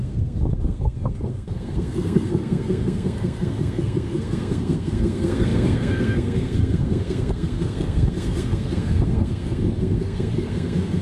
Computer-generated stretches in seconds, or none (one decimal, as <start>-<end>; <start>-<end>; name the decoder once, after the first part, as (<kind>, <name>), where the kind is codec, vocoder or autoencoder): 0.0-11.0 (codec, SNAC)